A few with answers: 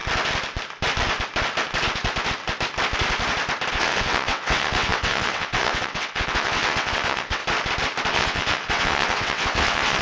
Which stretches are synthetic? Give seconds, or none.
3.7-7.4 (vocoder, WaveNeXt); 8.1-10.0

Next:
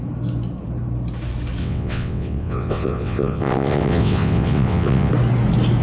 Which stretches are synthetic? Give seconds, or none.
1.6-5.1 (vocoder, WaveNeXt)

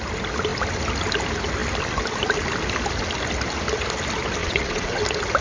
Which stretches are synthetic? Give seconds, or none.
4.4-5.0 (vocoder, WaveNeXt)

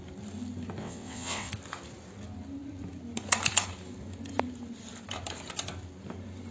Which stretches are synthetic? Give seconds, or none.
0.8-1.5 (vocoder, WaveNeXt)

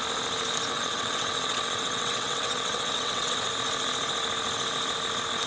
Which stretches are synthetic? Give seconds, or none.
0.7-3.5 (vocoder, WaveNeXt)